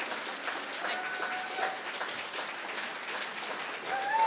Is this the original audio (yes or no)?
yes